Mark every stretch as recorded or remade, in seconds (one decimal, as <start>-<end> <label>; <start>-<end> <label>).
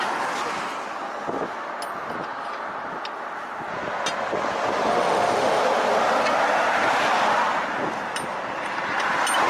0.0-4.9 recorded; 4.9-5.6 remade; 5.6-9.5 recorded